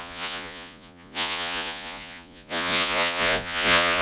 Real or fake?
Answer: fake